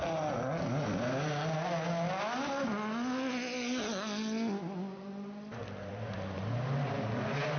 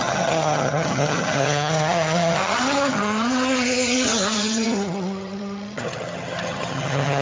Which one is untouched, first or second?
first